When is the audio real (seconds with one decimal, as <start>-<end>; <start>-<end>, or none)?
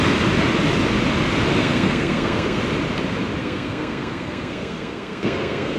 0.0-1.6; 2.6-3.4